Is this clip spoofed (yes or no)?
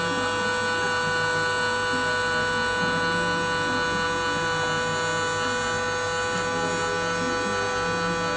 no